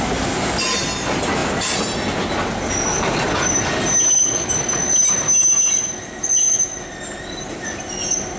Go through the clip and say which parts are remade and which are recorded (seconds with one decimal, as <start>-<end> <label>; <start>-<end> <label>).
0.0-8.4 recorded